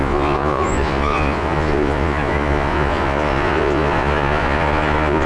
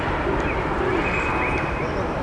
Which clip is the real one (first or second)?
second